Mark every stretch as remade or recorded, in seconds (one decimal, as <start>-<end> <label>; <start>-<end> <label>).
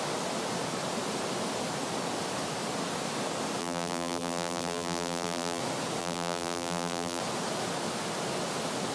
0.0-3.6 recorded; 3.6-5.6 remade; 5.6-6.0 recorded; 6.0-7.2 remade; 7.2-8.9 recorded